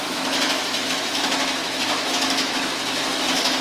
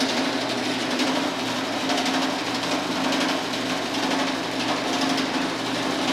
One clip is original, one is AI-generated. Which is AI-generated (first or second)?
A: first